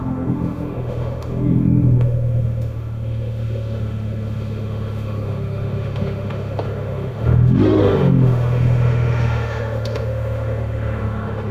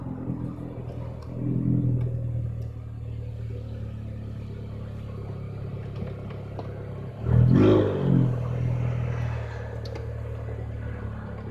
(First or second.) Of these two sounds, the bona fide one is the second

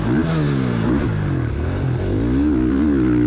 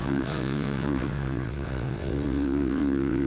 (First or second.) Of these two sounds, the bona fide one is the first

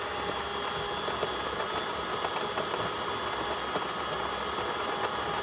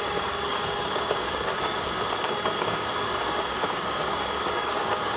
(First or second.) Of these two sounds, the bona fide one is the first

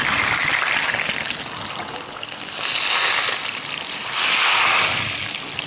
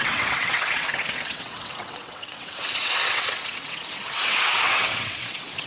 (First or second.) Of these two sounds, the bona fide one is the first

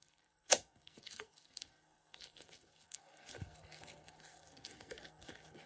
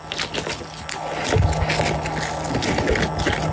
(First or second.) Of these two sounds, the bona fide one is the second